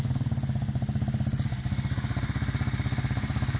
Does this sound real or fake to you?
real